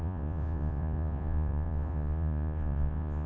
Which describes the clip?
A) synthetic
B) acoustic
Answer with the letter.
A